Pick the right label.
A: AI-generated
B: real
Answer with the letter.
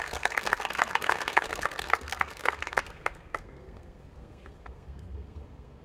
A